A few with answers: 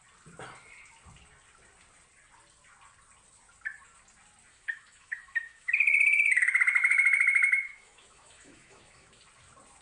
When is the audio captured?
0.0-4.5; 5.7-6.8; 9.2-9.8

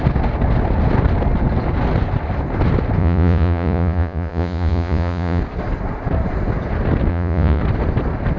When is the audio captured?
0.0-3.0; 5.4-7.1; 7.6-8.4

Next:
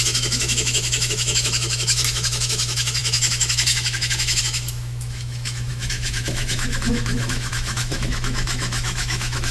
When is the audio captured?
none